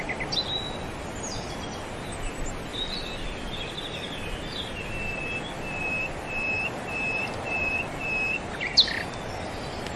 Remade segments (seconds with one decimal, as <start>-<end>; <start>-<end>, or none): 2.7-3.8